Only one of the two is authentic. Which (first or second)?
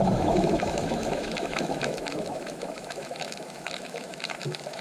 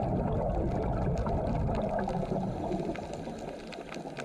second